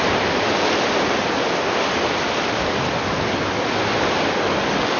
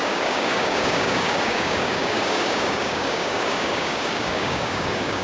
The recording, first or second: first